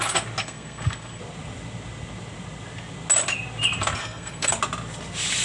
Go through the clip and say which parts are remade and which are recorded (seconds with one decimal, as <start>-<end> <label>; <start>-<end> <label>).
0.0-0.4 recorded; 0.4-1.2 remade; 1.2-4.0 recorded; 4.0-4.5 remade; 4.5-5.4 recorded